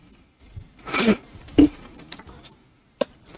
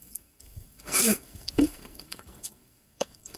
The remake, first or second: second